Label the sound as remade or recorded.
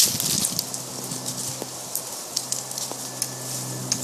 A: recorded